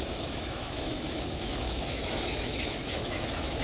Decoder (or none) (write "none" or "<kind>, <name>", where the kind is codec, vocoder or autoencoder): autoencoder, DAC-VAE